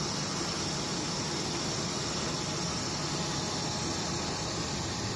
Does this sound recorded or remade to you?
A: recorded